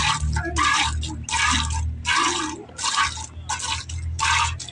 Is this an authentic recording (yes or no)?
yes